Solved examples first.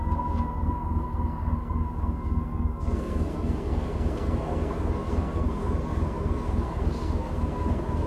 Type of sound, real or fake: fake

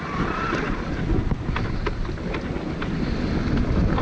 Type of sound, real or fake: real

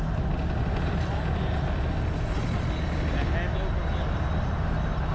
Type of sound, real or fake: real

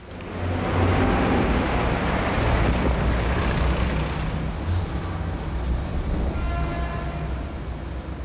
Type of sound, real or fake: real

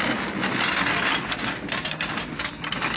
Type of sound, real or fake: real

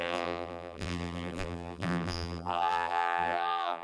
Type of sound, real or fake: fake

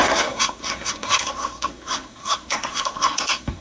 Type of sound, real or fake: fake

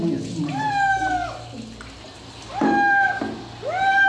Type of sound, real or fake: real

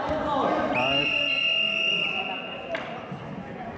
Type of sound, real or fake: real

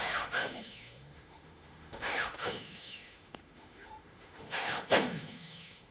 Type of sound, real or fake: fake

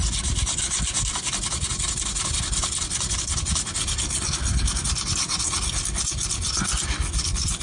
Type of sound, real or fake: real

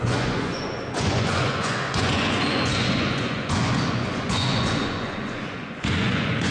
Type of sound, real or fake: fake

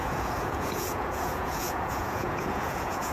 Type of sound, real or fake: fake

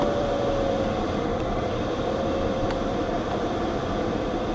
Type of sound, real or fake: fake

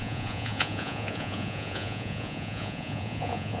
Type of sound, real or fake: fake